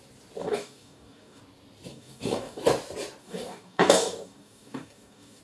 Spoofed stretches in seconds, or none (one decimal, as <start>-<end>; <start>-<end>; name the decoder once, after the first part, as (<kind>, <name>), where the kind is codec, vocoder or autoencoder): 0.4-1.4 (codec, DAC); 1.9-2.6; 3.2-5.4